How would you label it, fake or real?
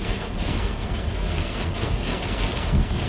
fake